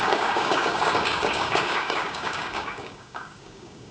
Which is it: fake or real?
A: fake